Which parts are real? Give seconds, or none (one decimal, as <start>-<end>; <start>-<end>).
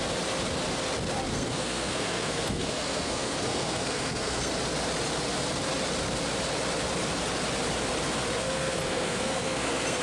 0.0-1.3; 4.5-8.4